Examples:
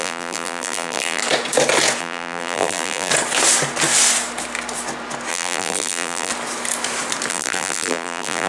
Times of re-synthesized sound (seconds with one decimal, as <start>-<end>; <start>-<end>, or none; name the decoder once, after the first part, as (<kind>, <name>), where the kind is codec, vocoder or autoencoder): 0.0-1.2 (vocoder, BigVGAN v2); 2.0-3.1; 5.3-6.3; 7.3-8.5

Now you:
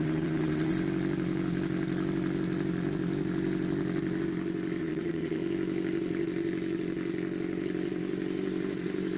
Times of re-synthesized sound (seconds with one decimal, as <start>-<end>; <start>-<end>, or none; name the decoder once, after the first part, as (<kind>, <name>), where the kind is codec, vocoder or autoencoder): 0.0-0.7 (vocoder, WaveNeXt); 4.8-5.4

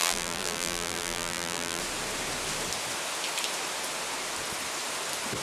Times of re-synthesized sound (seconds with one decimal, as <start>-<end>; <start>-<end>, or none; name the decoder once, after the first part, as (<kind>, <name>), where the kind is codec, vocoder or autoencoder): 0.0-1.8 (vocoder, BigVGAN v2)

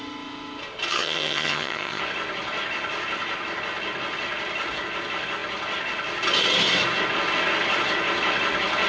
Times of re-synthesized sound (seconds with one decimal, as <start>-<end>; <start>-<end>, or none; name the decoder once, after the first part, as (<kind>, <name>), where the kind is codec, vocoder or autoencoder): 0.9-2.0 (vocoder, HiFi-GAN)

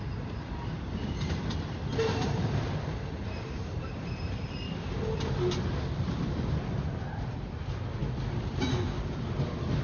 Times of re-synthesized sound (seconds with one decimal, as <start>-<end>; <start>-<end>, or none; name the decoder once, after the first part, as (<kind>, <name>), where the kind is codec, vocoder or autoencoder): 1.9-4.6 (vocoder, BigVGAN v2)

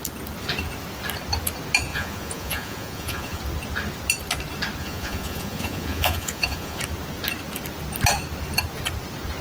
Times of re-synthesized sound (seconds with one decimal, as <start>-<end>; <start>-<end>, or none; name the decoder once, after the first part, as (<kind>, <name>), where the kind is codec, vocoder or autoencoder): 1.9-3.4 (vocoder, Vocos); 4.8-6.8